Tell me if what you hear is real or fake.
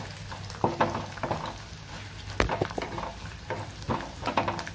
real